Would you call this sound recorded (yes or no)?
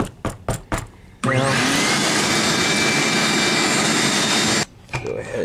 yes